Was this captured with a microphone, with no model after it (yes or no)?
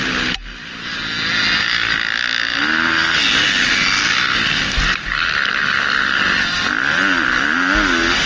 yes